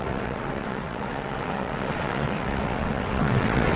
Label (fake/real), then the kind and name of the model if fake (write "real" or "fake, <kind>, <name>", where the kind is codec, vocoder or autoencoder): fake, vocoder, WaveNeXt